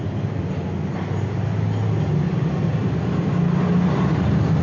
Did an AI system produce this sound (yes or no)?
no